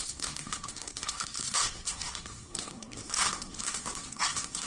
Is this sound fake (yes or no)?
yes